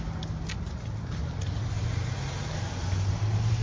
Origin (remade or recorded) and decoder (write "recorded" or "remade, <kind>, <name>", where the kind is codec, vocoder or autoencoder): recorded